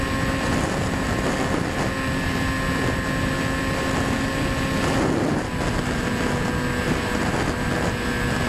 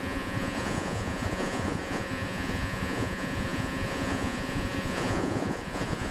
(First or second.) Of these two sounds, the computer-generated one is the second